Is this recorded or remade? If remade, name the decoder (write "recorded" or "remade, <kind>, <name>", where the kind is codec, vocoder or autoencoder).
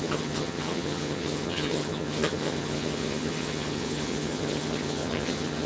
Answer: remade, vocoder, HiFi-GAN